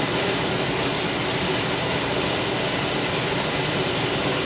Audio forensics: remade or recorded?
recorded